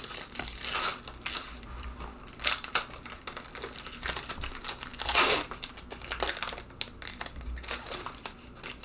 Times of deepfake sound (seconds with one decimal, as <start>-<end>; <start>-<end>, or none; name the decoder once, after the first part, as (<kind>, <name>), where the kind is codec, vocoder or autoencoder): none